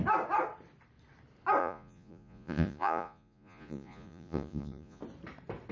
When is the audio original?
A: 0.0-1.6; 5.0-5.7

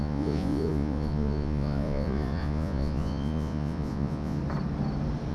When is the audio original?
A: 4.4-5.3